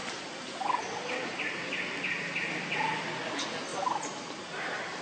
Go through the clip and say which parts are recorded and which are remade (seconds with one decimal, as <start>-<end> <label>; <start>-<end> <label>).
0.0-5.0 recorded